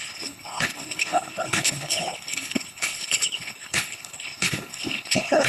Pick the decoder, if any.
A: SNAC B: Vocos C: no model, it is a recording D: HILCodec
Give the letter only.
D